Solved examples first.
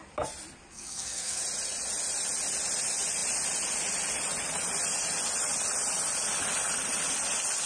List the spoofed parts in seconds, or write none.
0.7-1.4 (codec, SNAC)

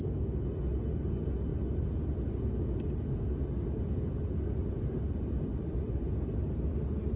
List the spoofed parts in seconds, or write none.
1.5-2.5 (vocoder, BigVGAN v2); 5.5-6.3

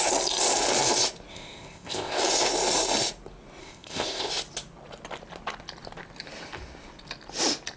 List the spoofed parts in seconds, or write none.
1.3-2.2 (codec, ZipCodec); 3.6-4.3

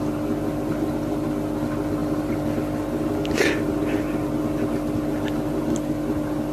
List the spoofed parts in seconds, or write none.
2.0-2.6 (vocoder, BigVGAN v2)